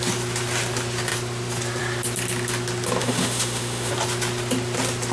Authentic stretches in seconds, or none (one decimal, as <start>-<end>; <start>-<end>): 0.0-3.0; 3.9-5.1